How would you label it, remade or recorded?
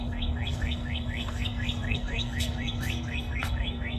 remade